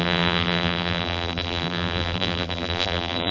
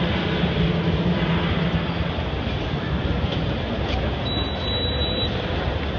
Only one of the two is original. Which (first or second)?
second